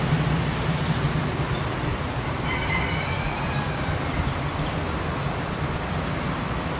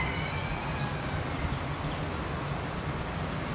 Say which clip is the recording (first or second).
second